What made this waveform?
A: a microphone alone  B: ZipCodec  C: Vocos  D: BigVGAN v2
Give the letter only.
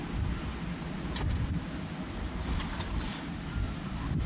A